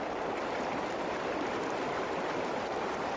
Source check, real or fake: real